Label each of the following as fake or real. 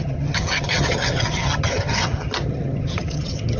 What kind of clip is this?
fake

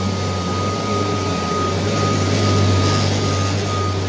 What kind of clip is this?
real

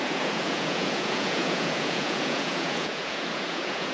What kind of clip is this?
fake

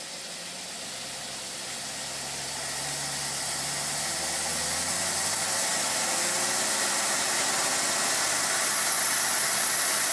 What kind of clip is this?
real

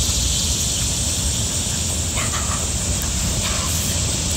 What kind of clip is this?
real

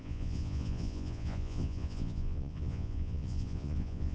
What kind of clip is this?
fake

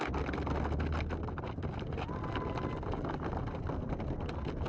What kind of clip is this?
real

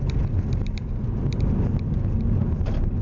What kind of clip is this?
real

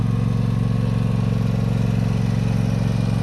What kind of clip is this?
real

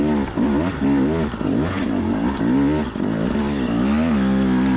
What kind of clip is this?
real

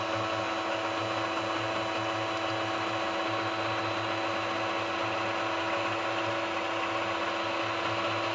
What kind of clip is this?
real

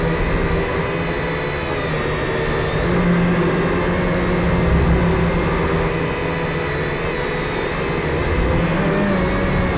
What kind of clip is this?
real